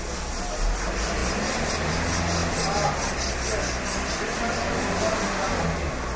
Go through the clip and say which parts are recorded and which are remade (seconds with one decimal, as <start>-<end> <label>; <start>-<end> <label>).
0.0-6.2 recorded